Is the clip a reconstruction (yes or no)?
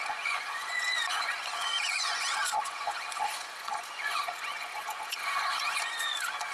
yes